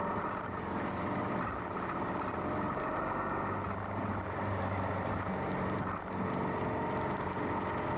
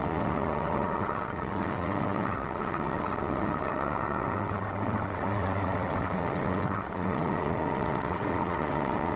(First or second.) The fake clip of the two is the second